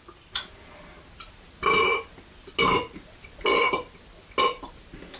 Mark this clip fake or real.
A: real